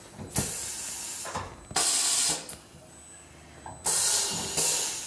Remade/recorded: recorded